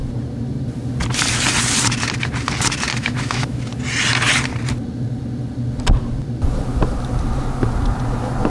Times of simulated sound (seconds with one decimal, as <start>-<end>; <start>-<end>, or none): 2.9-3.6